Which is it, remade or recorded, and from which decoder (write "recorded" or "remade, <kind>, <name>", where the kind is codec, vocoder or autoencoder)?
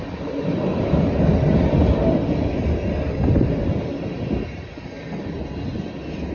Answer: recorded